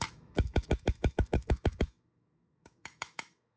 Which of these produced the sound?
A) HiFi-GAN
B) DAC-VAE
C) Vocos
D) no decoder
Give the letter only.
B